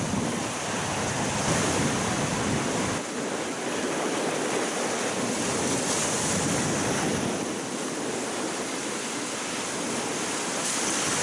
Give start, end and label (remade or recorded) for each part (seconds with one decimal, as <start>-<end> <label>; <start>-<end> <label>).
0.0-11.2 recorded